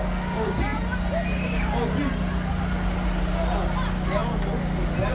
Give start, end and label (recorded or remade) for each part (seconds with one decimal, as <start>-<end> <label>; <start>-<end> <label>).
0.0-5.1 recorded